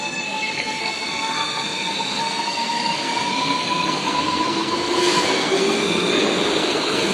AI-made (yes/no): yes